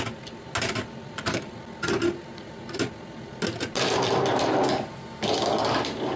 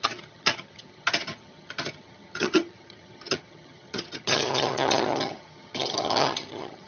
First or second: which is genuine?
first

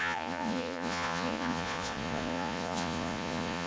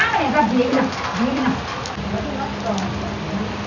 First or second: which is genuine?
second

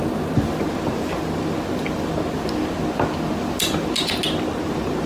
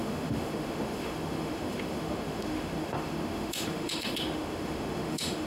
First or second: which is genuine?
first